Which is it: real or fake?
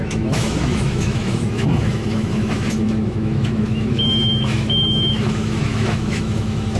fake